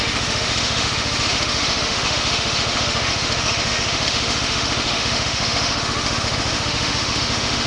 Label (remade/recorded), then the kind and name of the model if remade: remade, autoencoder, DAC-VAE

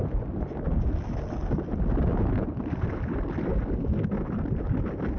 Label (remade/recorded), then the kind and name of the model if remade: recorded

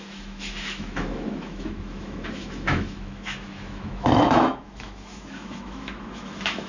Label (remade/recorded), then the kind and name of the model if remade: remade, autoencoder, DAC-VAE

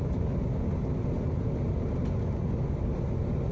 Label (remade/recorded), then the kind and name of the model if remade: recorded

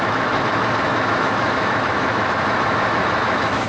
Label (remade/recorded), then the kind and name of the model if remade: remade, autoencoder, DAC-VAE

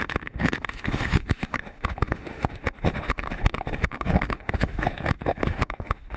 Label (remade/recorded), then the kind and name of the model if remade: remade, autoencoder, DAC-VAE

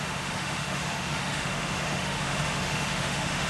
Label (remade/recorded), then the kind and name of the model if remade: remade, autoencoder, DAC-VAE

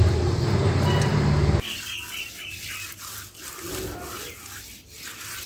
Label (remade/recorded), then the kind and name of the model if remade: recorded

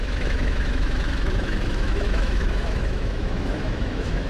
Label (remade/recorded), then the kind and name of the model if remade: remade, autoencoder, DAC-VAE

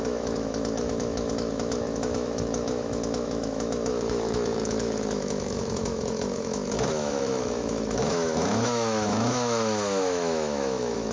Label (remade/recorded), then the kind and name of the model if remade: remade, autoencoder, DAC-VAE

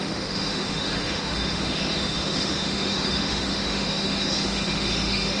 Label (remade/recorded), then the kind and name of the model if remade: remade, autoencoder, DAC-VAE